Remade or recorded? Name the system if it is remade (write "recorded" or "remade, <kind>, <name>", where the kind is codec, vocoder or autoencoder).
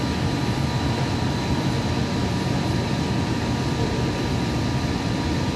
recorded